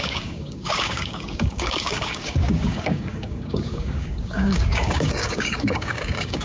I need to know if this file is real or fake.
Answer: fake